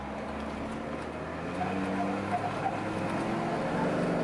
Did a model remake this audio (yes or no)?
no